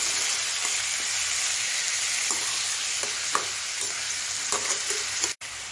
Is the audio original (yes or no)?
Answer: yes